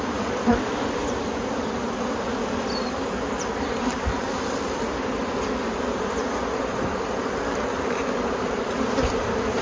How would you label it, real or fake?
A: fake